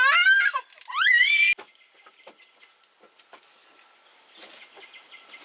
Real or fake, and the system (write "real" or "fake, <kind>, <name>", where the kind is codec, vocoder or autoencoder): real